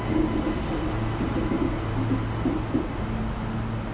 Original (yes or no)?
yes